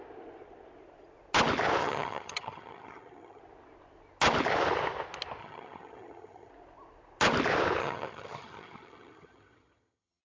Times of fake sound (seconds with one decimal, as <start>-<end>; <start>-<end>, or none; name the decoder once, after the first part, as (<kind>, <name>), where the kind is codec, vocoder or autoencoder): 1.8-3.4 (vocoder, HiFi-GAN); 5.4-6.5; 7.8-10.2